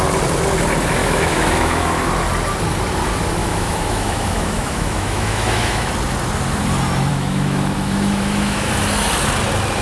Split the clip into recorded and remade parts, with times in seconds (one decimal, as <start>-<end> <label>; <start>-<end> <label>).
0.0-1.0 recorded; 1.0-2.1 remade; 2.1-3.4 recorded; 3.4-5.9 remade; 5.9-7.1 recorded; 7.1-8.7 remade; 8.7-9.8 recorded